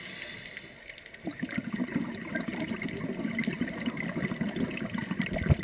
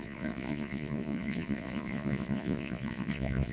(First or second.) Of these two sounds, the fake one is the second